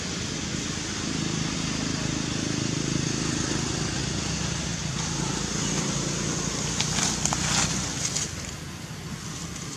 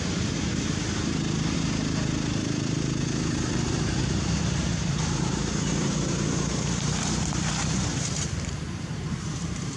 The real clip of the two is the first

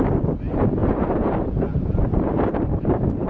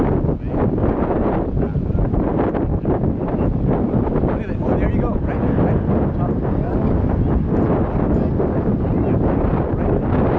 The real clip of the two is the second